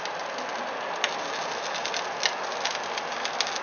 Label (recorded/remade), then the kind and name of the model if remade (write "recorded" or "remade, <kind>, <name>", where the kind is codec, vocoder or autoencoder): recorded